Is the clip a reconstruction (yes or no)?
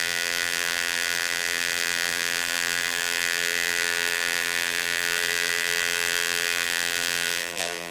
yes